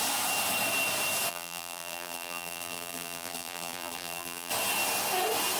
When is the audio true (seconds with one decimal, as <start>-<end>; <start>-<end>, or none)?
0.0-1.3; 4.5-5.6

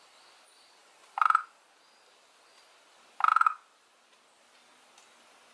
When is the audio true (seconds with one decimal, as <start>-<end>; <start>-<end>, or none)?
0.0-0.8; 1.6-5.5

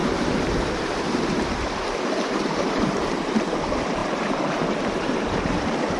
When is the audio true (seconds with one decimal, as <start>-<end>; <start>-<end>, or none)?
none

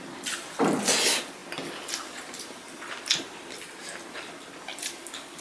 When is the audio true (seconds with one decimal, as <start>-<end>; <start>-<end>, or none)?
1.4-1.9